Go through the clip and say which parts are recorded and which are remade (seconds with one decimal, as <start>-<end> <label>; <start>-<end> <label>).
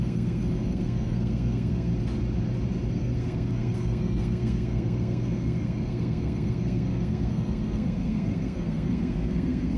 0.0-1.9 remade; 1.9-2.9 recorded; 2.9-9.8 remade